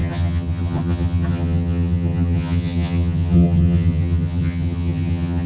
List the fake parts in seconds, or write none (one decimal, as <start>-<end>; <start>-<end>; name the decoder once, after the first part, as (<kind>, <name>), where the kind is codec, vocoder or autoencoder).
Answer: 0.0-5.5 (vocoder, HiFi-GAN)